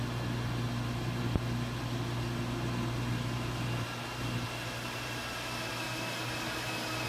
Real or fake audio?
real